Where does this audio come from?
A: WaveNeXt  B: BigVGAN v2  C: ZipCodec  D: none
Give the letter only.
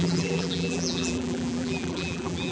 B